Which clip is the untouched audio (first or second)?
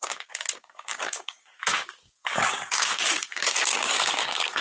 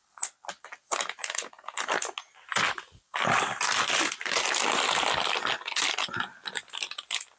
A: second